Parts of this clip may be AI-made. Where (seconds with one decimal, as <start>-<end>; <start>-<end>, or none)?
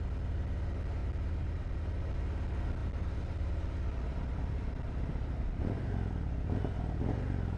1.0-2.1; 2.8-7.6